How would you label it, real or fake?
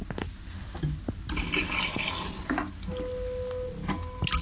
real